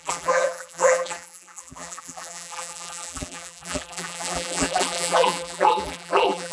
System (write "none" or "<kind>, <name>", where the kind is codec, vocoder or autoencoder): vocoder, BigVGAN v2